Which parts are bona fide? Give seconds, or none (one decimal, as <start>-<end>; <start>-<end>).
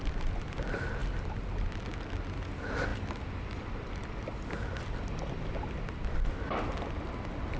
0.0-7.6